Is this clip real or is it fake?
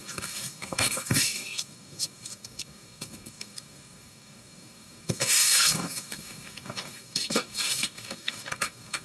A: fake